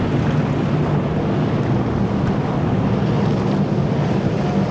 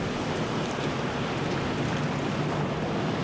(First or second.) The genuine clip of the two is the first